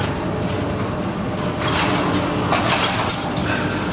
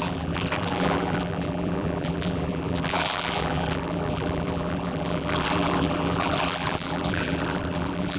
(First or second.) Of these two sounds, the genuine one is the first